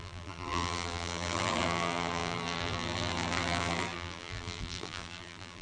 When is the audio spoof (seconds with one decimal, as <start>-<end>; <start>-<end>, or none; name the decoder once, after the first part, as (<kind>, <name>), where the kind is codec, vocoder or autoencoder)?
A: 0.0-5.6 (vocoder, BigVGAN v2)